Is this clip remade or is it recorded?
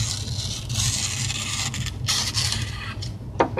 recorded